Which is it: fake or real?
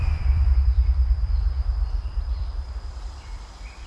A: fake